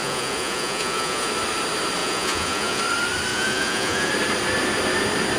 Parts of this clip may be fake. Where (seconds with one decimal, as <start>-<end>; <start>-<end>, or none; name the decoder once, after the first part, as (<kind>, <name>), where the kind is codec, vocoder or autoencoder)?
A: 0.0-1.3 (vocoder, Vocos); 2.0-2.8; 3.3-4.1